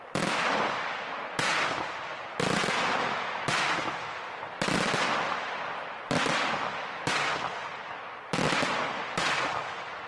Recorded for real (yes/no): yes